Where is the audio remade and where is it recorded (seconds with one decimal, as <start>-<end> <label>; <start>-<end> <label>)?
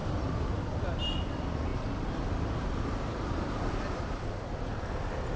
0.0-5.4 recorded